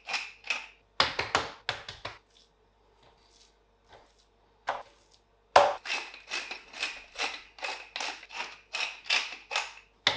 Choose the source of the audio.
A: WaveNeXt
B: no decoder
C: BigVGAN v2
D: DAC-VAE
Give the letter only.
B